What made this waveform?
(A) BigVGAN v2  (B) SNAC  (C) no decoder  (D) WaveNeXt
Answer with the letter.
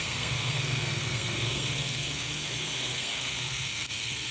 B